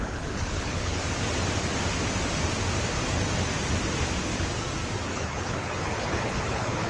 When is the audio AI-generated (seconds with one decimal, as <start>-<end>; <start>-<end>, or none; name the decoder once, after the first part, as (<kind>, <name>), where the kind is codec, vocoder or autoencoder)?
0.0-1.0 (codec, HILCodec); 5.1-6.9